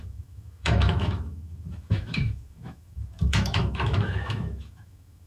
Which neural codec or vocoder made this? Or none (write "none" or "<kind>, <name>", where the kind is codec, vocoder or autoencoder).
autoencoder, DAC-VAE